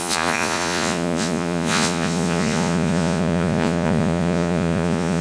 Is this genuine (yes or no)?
no